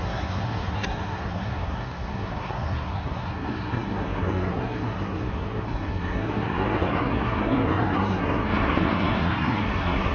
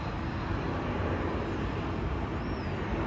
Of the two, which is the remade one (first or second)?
first